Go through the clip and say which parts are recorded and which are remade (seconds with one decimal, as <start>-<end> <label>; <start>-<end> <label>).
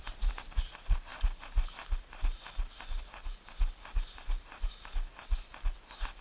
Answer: 0.0-6.2 recorded